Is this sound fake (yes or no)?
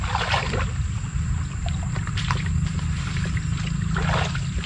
no